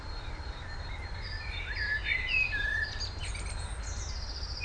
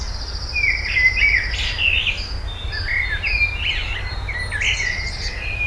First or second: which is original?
second